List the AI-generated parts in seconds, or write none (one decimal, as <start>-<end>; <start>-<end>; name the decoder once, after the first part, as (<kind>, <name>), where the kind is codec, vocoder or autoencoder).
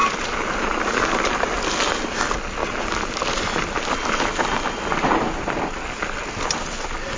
none